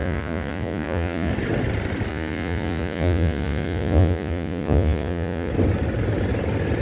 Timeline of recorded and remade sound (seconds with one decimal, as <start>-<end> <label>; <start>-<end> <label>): 0.0-1.3 remade; 1.3-2.1 recorded; 2.1-5.5 remade; 5.5-6.8 recorded